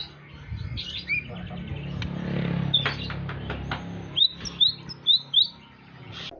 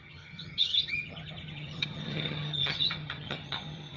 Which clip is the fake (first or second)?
second